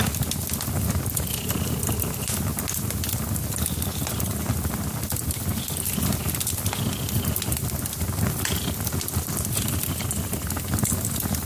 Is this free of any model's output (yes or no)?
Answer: yes